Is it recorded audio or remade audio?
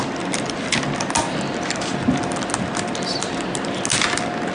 recorded